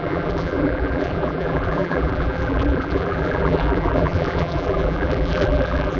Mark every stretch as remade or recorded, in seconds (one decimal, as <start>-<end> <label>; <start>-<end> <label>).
0.0-6.0 remade

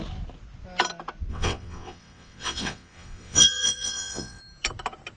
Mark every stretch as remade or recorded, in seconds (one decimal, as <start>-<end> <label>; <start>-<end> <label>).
0.0-1.3 recorded; 1.3-4.4 remade; 4.4-5.2 recorded